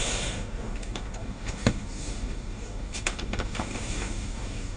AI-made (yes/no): yes